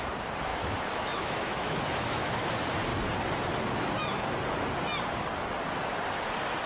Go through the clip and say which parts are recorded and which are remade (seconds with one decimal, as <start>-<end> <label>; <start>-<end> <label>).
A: 0.0-0.5 recorded; 0.5-2.5 remade; 2.5-6.7 recorded